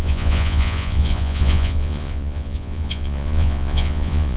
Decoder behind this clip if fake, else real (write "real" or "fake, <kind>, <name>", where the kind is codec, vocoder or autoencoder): fake, vocoder, Vocos